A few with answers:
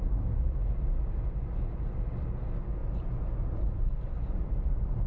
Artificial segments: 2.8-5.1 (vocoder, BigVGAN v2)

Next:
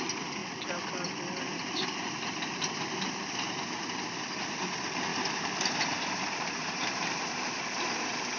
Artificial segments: 5.1-7.5 (vocoder, BigVGAN v2)

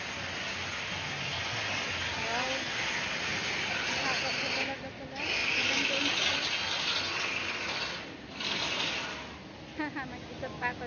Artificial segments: 5.4-6.3 (vocoder, BigVGAN v2)